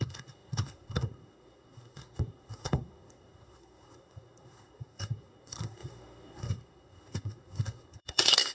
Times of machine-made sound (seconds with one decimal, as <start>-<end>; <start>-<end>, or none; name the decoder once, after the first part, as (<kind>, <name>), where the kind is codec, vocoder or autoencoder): 0.0-8.5 (codec, SNAC)